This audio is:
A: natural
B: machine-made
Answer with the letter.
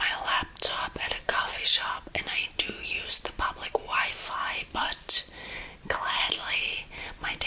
A